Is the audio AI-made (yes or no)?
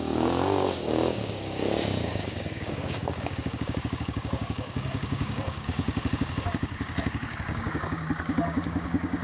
yes